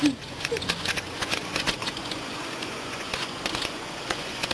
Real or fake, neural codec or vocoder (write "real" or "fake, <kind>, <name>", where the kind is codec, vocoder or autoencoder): fake, vocoder, Vocos